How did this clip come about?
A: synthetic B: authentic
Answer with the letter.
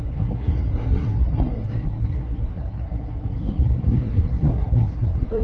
A